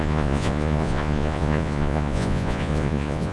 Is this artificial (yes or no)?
yes